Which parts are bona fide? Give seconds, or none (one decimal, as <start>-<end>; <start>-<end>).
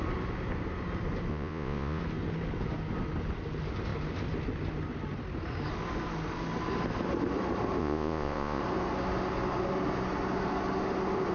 0.0-1.3; 2.0-7.8; 8.6-11.3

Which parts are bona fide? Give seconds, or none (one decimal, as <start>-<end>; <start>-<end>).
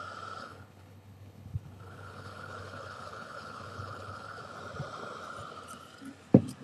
0.0-0.4; 4.4-6.6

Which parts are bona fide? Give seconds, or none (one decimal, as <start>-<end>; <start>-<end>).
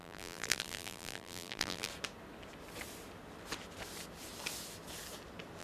1.9-5.6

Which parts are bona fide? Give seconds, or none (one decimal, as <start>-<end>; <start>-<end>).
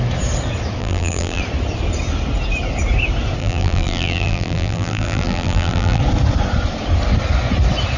0.0-0.8; 1.4-3.4; 6.0-8.0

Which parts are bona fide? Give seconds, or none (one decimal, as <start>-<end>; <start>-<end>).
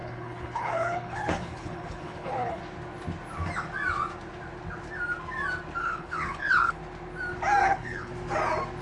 2.6-5.8; 6.8-7.6; 8.1-8.8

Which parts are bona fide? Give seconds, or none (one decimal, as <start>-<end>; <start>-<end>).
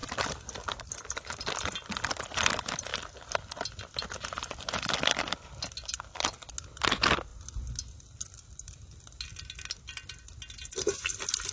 0.0-11.5